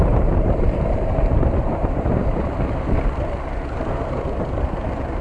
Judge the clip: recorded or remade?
remade